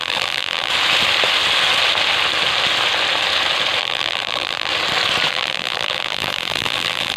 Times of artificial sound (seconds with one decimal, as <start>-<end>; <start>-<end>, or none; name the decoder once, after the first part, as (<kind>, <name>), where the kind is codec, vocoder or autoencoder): 0.0-0.7 (vocoder, BigVGAN v2); 3.8-4.7; 5.3-7.2